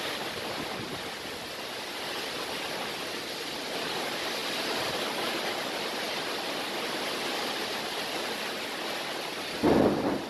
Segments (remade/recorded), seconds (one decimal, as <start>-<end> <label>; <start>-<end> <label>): 0.0-10.3 recorded

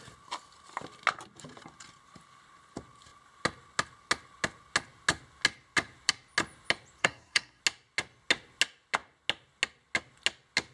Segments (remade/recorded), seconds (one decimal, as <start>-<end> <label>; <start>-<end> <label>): 0.0-7.0 recorded; 7.0-7.6 remade; 7.6-10.7 recorded

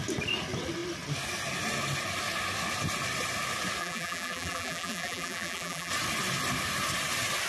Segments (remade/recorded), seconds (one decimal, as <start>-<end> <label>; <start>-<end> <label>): 0.0-3.8 recorded; 3.8-5.9 remade; 5.9-7.5 recorded

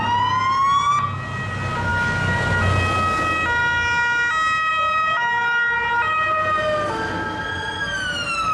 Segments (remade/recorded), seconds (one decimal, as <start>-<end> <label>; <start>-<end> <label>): 0.0-8.5 recorded

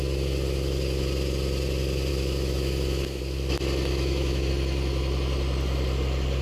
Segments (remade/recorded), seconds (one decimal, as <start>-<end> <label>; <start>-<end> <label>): 0.0-2.1 recorded; 2.1-3.2 remade; 3.2-3.9 recorded; 3.9-4.5 remade; 4.5-6.4 recorded

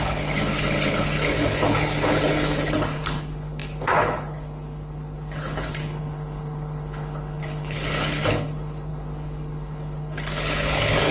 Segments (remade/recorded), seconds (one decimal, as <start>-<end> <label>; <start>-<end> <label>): 0.0-11.1 remade

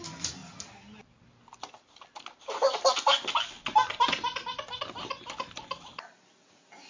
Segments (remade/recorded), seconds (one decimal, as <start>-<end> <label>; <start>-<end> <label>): 0.0-6.9 recorded

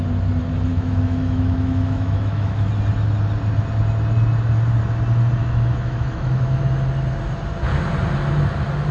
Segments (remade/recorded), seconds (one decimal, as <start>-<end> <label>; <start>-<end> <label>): 0.0-0.7 recorded; 0.7-2.7 remade; 2.7-5.4 recorded; 5.4-6.6 remade; 6.6-8.9 recorded